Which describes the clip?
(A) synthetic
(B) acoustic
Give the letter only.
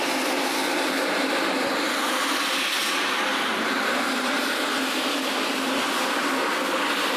B